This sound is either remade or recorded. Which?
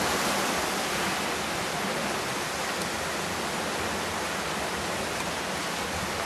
recorded